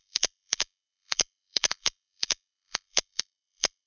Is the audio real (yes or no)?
no